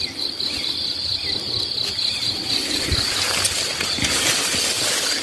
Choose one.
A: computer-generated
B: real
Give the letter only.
B